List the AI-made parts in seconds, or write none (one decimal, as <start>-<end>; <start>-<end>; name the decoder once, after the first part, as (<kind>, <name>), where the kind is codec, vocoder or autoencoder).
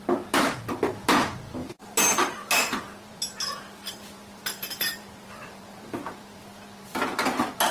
none